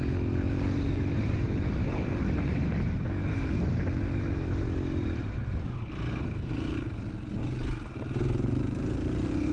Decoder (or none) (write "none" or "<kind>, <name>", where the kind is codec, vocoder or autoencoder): none